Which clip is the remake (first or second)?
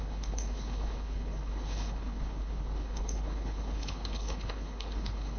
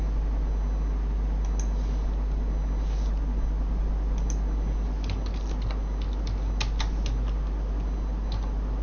first